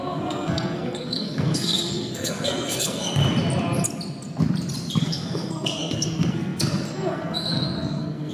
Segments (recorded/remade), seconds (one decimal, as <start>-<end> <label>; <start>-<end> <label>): 0.0-3.2 remade; 3.2-5.0 recorded; 5.0-8.3 remade